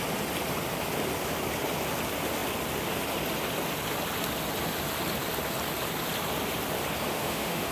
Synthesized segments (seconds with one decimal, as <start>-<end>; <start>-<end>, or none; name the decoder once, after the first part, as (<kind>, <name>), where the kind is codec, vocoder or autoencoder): 7.1-7.7 (autoencoder, DAC-VAE)